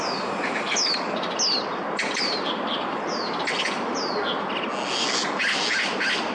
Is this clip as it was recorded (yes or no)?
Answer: yes